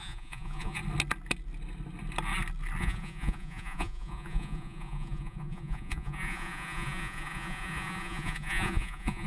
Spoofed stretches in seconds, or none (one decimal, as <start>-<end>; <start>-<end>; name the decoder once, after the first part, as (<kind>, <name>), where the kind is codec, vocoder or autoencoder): 0.0-0.8 (vocoder, Vocos); 2.8-9.3

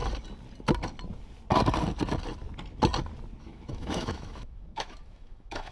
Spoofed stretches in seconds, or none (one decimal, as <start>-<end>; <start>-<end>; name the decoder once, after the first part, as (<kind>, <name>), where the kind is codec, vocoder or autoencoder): 3.4-5.7 (autoencoder, DAC-VAE)

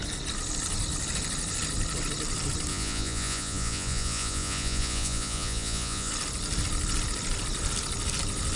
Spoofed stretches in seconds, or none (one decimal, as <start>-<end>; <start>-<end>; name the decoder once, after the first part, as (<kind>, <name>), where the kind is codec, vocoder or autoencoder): 2.7-6.1 (vocoder, Vocos)

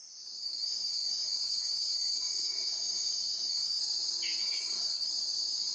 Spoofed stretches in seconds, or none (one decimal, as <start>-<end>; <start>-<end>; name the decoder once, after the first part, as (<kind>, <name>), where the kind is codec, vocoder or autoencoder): 0.4-3.8 (codec, SNAC); 4.4-5.1

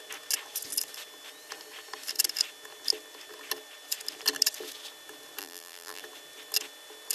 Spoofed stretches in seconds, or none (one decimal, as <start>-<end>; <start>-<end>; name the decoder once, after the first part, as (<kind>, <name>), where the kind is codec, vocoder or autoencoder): 5.4-6.0 (vocoder, BigVGAN v2)